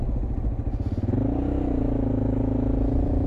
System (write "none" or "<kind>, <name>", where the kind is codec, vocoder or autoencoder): none